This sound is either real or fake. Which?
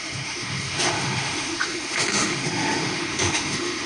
fake